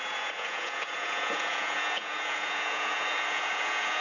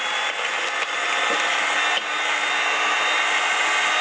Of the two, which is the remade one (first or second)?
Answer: first